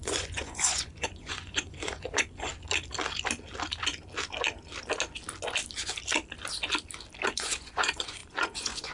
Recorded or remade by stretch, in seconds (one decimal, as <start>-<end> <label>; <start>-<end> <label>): 0.0-2.5 remade; 2.5-7.3 recorded; 7.3-8.9 remade